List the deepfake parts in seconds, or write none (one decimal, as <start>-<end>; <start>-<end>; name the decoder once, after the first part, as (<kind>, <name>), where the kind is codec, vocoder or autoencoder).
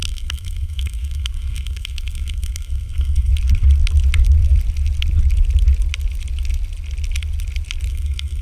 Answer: 0.0-3.3 (codec, SNAC); 7.9-8.4